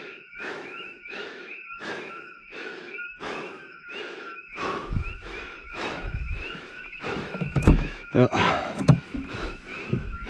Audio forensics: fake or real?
fake